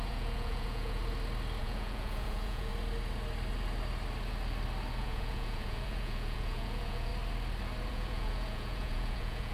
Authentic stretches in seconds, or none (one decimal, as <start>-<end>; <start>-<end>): 1.0-1.6; 2.7-4.9; 7.1-7.9